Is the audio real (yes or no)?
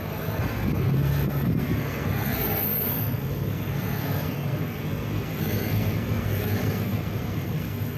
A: no